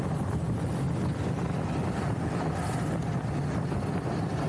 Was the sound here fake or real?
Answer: real